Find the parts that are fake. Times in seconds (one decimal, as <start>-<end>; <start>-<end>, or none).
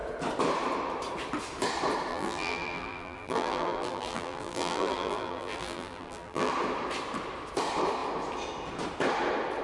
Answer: 2.1-6.5